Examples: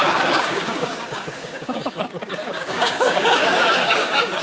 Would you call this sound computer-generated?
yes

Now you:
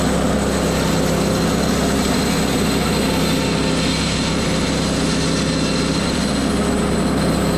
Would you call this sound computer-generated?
no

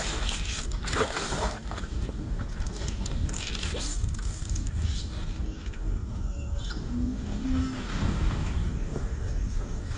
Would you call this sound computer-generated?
yes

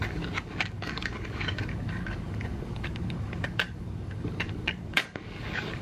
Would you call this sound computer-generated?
yes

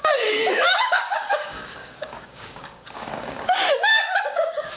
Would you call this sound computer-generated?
yes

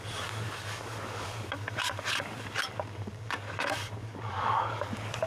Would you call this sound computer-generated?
yes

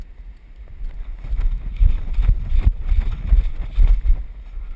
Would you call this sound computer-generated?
no